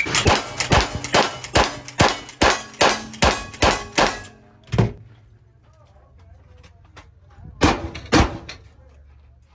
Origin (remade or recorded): recorded